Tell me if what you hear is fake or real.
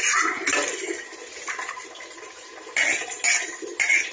real